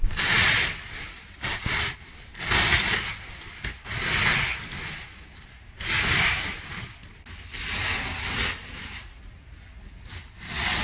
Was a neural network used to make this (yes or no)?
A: no